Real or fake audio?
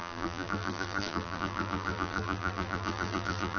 fake